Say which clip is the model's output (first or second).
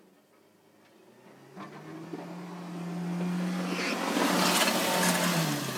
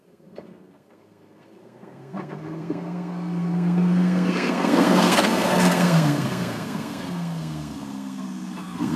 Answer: second